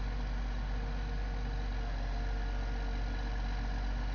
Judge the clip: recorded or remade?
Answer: recorded